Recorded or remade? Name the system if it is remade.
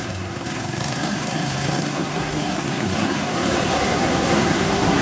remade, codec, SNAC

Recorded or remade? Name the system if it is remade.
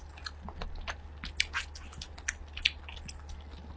recorded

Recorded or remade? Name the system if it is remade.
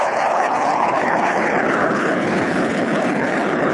remade, codec, HILCodec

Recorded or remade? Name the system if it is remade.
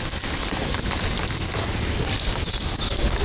recorded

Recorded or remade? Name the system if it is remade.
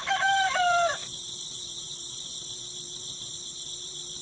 remade, vocoder, BigVGAN v2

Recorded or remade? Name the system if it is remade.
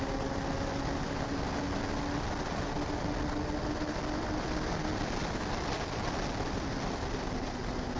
recorded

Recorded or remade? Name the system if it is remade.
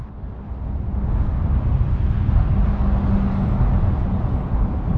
recorded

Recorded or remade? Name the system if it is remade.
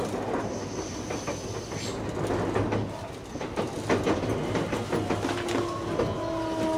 recorded